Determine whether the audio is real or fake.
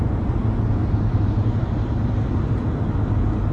real